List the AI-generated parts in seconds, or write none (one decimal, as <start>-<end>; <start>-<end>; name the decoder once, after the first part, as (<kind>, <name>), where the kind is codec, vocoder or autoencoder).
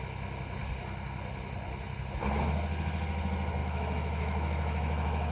3.6-5.3 (autoencoder, DAC-VAE)